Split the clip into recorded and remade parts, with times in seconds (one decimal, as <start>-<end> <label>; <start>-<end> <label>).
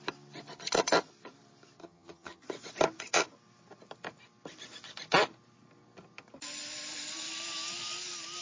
0.0-1.8 recorded; 1.8-2.4 remade; 2.4-8.4 recorded